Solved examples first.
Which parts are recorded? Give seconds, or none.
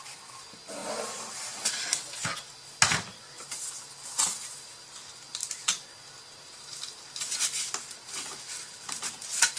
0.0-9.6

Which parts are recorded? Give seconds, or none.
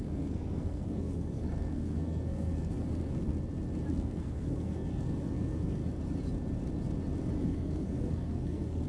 3.3-3.9; 5.8-7.4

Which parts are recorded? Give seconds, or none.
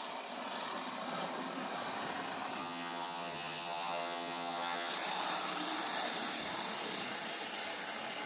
0.0-2.6; 4.9-8.3